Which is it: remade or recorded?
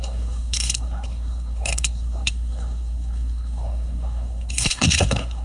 remade